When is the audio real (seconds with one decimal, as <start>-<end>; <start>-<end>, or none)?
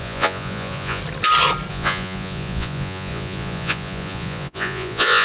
1.0-1.7